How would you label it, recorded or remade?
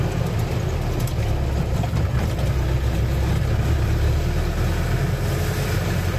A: recorded